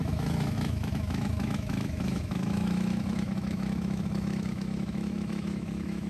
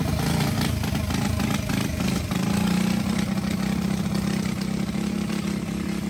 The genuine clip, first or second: second